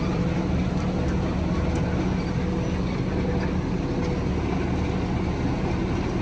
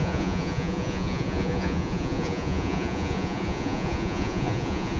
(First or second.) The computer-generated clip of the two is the second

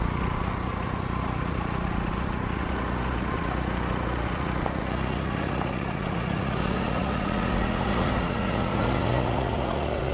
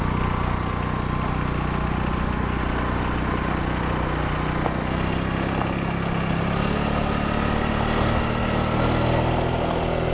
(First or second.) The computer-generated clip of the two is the first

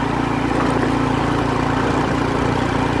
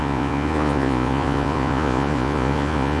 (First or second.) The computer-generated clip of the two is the second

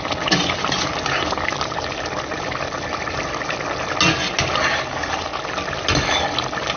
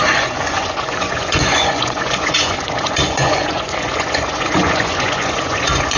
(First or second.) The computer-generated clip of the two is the second